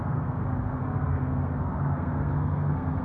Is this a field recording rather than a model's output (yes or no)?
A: no